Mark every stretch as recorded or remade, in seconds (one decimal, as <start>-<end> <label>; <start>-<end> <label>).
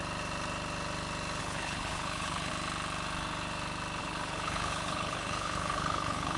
0.0-1.4 recorded; 1.4-2.5 remade; 2.5-4.0 recorded; 4.0-6.4 remade